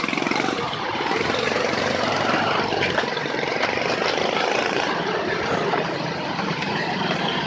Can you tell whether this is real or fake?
fake